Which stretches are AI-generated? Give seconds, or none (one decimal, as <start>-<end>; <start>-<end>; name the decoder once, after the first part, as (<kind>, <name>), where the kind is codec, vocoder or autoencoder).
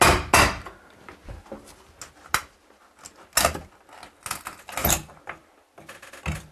none